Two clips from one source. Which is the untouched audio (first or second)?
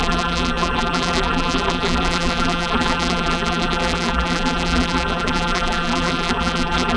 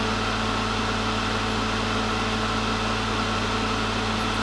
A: second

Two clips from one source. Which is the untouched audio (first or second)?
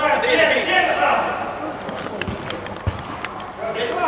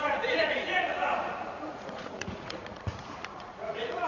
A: first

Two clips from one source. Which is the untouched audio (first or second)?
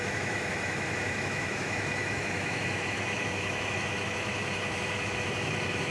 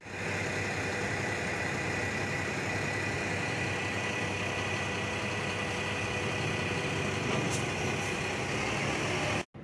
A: second